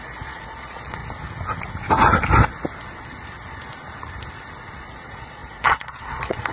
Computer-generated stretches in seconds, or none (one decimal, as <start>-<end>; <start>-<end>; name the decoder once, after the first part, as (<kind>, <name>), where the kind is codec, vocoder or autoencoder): 0.0-1.0 (vocoder, Vocos); 4.9-6.5